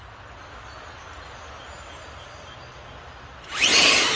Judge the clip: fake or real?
real